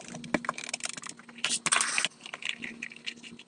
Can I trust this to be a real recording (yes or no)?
yes